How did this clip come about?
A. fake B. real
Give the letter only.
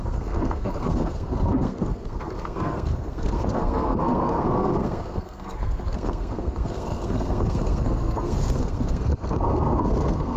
A